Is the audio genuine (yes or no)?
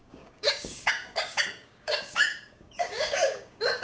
no